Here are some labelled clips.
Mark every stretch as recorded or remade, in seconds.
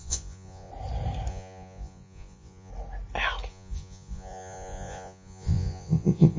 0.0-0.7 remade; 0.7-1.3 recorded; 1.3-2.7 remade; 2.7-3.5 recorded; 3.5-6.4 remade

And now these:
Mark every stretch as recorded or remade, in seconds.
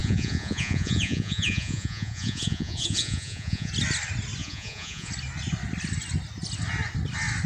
0.0-3.7 remade; 3.7-4.4 recorded; 4.4-5.1 remade; 5.1-7.5 recorded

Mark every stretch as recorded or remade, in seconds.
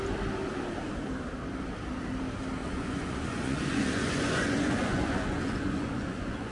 0.0-2.6 recorded; 2.6-6.5 remade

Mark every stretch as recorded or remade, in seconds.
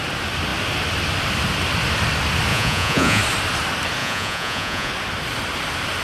0.0-2.5 recorded; 2.5-3.2 remade; 3.2-4.0 recorded; 4.0-4.9 remade; 4.9-6.0 recorded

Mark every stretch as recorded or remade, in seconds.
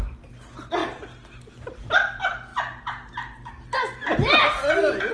0.0-5.1 recorded